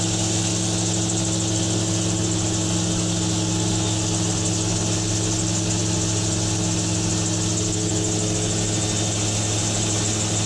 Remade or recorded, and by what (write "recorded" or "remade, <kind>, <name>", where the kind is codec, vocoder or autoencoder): recorded